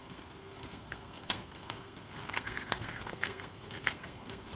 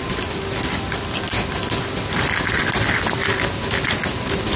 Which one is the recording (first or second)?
second